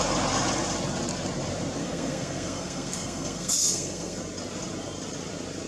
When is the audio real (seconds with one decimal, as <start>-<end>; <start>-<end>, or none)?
0.0-1.8; 4.2-5.7